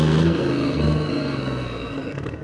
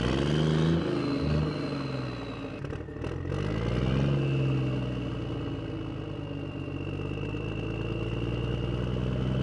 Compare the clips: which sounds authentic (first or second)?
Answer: second